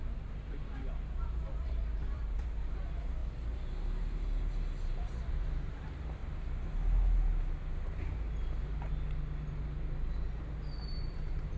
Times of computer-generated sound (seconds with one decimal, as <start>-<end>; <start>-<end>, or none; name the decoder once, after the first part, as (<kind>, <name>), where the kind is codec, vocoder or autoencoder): 0.0-3.2 (vocoder, BigVGAN v2); 5.3-6.2; 11.1-11.6